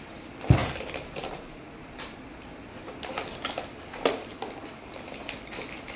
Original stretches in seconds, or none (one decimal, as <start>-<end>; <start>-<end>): 0.0-6.0